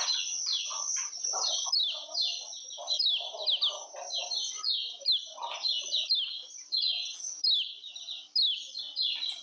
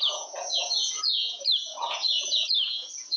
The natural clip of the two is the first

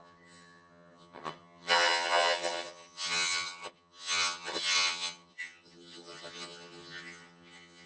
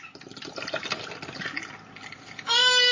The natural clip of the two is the second